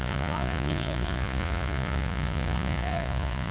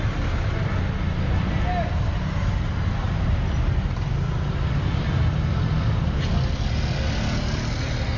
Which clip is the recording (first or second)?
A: second